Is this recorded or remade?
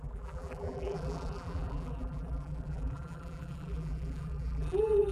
remade